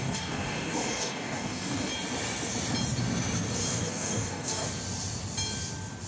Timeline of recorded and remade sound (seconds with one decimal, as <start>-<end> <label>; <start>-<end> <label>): 0.0-1.9 remade; 1.9-3.8 recorded; 3.8-4.6 remade; 4.6-6.1 recorded